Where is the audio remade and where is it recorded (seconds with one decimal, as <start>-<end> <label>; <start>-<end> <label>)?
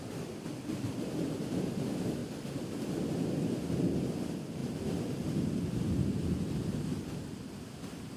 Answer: 0.0-8.2 remade